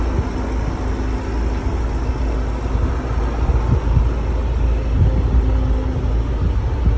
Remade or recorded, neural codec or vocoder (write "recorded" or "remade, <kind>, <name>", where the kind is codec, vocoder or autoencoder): recorded